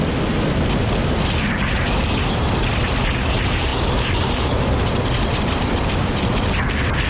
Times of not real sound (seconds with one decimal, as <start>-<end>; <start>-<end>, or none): none